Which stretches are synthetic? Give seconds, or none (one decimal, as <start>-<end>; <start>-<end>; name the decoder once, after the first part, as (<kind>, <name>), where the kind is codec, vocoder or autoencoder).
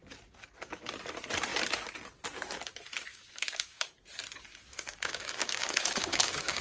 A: 3.1-3.9 (codec, DAC); 4.5-6.6